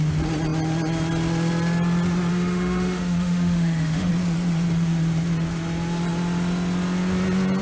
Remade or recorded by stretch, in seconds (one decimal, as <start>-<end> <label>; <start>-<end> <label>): 0.0-2.3 recorded; 2.3-4.1 remade; 4.1-7.6 recorded